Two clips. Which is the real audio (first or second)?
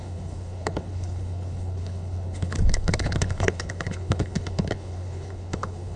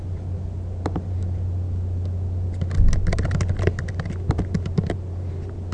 second